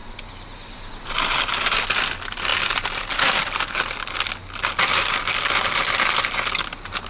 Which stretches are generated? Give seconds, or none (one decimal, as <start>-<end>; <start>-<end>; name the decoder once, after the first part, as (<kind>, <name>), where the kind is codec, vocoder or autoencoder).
none